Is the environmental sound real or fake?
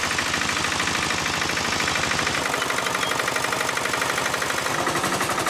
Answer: real